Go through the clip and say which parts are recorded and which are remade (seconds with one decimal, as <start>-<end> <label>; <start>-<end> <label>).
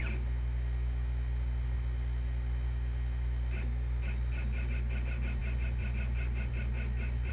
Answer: 0.0-7.3 recorded